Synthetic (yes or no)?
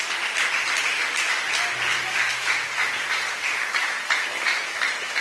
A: no